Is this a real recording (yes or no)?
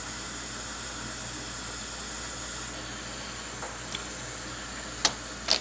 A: yes